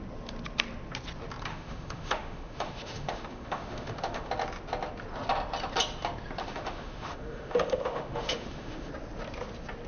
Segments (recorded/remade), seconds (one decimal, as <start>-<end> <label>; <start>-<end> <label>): 0.0-1.5 recorded; 1.5-4.3 remade; 4.3-6.4 recorded; 6.4-8.9 remade; 8.9-9.9 recorded